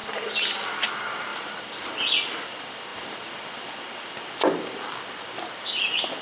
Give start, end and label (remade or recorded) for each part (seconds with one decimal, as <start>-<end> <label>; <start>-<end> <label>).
0.0-6.2 recorded